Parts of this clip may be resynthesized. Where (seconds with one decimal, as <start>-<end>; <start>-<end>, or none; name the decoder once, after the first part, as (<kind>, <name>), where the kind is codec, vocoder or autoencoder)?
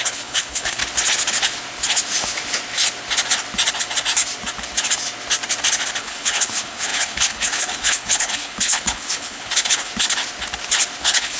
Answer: 0.0-0.8 (codec, HILCodec); 6.0-9.9; 11.0-11.4